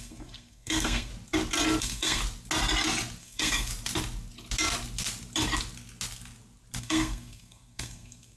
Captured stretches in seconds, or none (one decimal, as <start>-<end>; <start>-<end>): 1.1-1.8; 2.2-3.2; 3.7-6.8